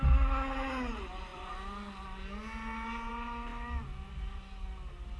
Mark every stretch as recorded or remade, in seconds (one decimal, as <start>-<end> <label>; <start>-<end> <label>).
0.0-5.2 recorded